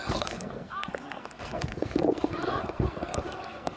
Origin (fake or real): fake